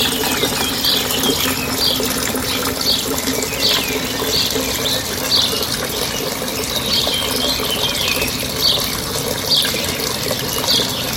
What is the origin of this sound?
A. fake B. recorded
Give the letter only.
B